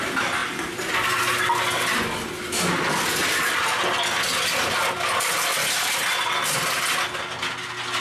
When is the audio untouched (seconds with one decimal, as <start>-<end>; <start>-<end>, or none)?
0.0-8.0